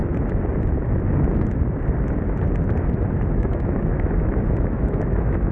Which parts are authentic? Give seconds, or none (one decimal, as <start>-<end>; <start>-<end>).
0.0-3.3